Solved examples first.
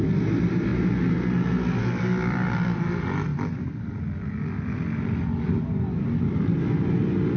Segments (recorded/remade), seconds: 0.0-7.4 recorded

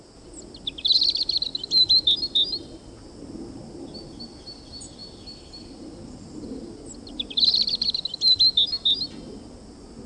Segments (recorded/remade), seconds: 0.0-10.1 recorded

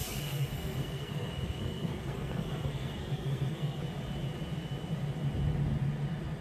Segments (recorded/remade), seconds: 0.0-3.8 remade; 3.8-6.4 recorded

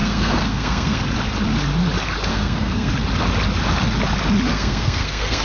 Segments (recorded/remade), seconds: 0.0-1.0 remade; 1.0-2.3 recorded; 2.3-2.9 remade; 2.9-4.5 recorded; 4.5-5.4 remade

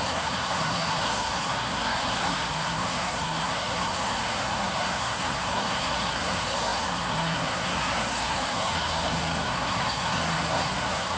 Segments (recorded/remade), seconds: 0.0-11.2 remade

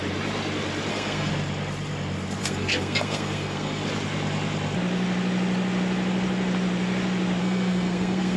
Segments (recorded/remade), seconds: 0.0-0.9 recorded; 0.9-1.3 remade; 1.3-2.4 recorded; 2.4-3.8 remade; 3.8-7.4 recorded; 7.4-8.4 remade

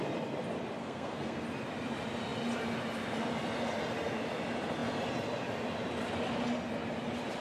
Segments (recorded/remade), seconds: 0.0-0.8 recorded; 0.8-1.4 remade; 1.4-7.4 recorded

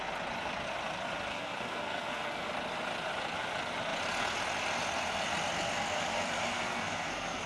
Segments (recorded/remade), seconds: 0.0-1.3 recorded; 1.3-2.5 remade; 2.5-6.5 recorded; 6.5-7.5 remade